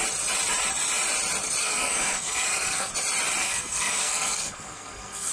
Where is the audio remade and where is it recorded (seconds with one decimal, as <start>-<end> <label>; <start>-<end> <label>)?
0.0-1.6 recorded; 1.6-2.9 remade; 2.9-3.4 recorded; 3.4-5.3 remade